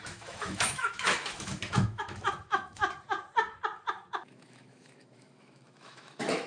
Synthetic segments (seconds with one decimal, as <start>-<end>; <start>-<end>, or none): 0.0-2.8; 3.9-6.5